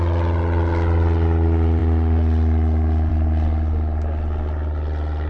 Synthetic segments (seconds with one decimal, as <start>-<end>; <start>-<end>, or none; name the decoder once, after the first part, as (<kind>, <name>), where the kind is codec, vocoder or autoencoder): none